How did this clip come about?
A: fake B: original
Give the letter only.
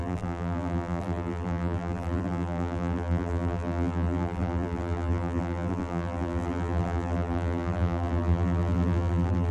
A